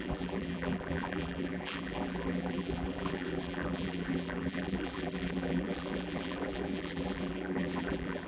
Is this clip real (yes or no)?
no